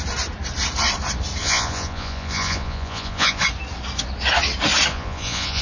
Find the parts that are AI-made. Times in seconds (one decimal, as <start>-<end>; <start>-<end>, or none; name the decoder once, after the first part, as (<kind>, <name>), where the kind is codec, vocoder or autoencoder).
1.4-3.4 (vocoder, Vocos); 4.9-5.6